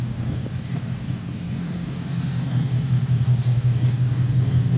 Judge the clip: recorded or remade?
remade